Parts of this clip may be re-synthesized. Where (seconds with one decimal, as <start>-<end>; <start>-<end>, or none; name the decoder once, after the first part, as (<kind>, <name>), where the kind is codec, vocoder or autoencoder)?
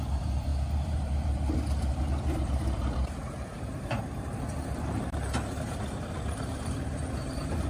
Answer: 0.0-7.7 (vocoder, BigVGAN v2)